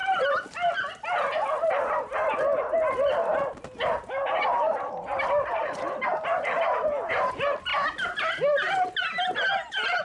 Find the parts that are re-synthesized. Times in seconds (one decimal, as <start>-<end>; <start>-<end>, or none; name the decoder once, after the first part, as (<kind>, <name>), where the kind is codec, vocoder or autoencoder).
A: none